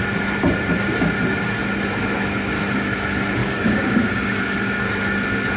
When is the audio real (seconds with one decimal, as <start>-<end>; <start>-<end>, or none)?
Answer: 0.0-3.4; 4.4-5.6